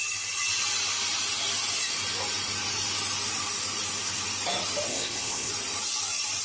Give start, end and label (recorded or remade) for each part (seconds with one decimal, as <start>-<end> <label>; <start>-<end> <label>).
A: 0.0-4.9 recorded; 4.9-5.5 remade; 5.5-6.4 recorded